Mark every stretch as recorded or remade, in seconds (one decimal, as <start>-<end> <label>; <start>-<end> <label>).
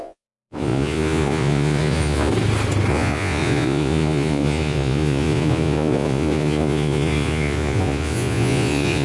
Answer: 0.0-2.3 remade; 2.3-2.9 recorded; 2.9-9.0 remade